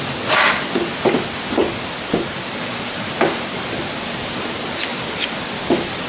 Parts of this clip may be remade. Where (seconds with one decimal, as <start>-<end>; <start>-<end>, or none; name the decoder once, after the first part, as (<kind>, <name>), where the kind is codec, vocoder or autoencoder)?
none